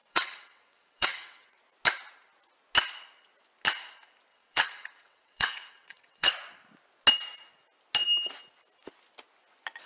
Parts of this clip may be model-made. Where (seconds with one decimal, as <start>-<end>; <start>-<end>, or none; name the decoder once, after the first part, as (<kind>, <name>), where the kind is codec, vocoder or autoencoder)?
0.0-1.6 (vocoder, WaveNeXt); 4.3-6.3